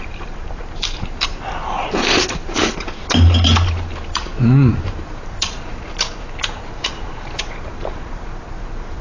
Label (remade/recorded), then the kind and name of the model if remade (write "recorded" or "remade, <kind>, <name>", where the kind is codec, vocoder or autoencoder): remade, vocoder, BigVGAN v2